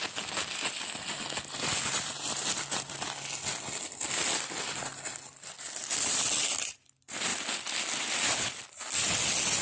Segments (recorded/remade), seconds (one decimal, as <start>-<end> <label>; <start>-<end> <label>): 0.0-9.6 recorded